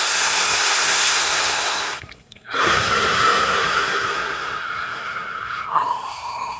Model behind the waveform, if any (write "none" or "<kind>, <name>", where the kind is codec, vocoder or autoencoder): codec, SNAC